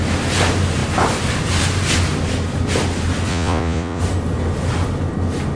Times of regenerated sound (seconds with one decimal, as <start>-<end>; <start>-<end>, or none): 3.3-4.0